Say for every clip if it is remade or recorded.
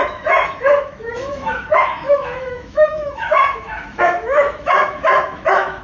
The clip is remade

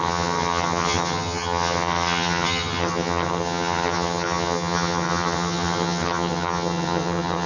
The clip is remade